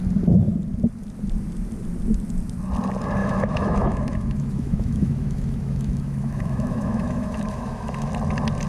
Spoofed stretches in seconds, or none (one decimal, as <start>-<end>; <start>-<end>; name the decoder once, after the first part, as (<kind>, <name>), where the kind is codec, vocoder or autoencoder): 3.2-8.1 (autoencoder, DAC-VAE)